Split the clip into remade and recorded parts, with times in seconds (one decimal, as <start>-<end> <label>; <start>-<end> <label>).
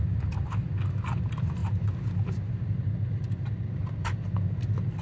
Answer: 0.0-5.0 recorded